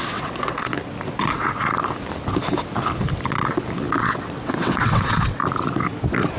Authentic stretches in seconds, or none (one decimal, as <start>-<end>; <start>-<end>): 0.7-4.0; 5.4-6.4